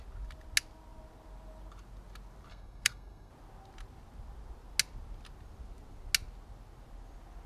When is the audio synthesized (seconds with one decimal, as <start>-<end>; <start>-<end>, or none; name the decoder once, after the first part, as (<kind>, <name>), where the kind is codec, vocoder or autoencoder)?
2.5-3.3 (codec, SNAC)